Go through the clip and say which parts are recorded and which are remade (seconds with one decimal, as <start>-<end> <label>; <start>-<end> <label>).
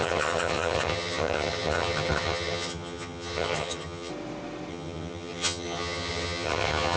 0.0-4.1 remade; 4.1-4.7 recorded; 4.7-7.0 remade